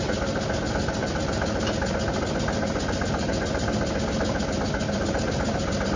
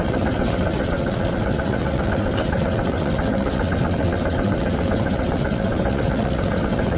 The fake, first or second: second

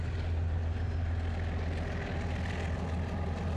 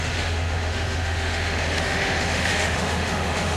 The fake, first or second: second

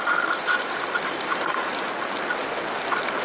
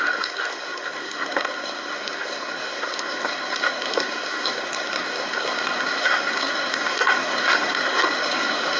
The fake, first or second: second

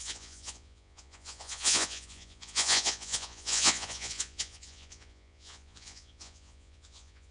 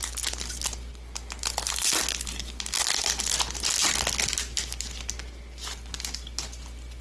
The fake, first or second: first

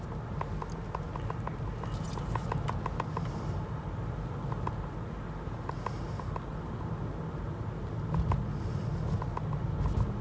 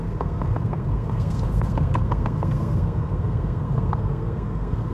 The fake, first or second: second